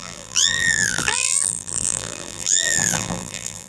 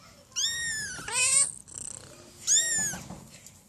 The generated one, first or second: first